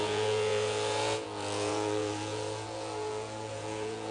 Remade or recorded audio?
remade